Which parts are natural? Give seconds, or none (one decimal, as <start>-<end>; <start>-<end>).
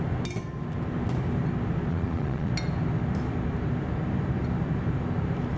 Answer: 0.0-1.9; 2.5-5.6